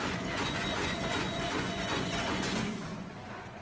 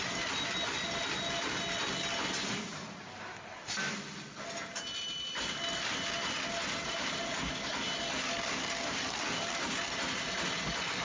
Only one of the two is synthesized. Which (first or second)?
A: first